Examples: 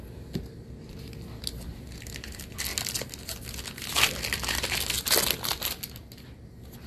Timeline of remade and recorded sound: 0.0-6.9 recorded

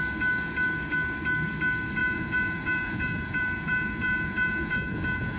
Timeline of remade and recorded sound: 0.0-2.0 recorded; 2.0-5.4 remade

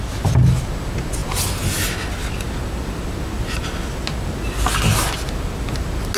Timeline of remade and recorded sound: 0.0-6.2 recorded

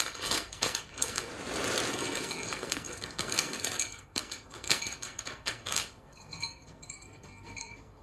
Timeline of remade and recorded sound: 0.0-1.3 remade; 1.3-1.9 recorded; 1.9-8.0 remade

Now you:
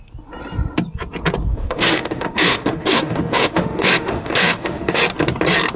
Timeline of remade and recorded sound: 0.0-1.5 recorded; 1.5-5.0 remade; 5.0-5.8 recorded

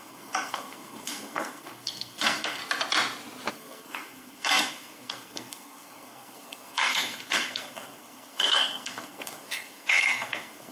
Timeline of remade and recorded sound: 0.0-2.6 remade; 2.6-3.5 recorded; 3.5-10.7 remade

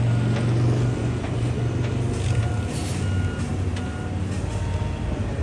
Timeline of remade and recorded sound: 0.0-1.0 recorded; 1.0-1.7 remade; 1.7-5.4 recorded